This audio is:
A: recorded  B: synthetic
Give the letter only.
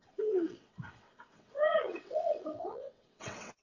B